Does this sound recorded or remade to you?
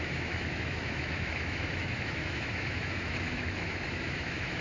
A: remade